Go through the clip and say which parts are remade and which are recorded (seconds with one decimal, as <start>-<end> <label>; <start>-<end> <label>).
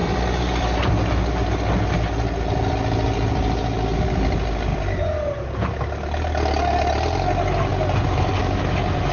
0.0-0.9 remade; 0.9-9.1 recorded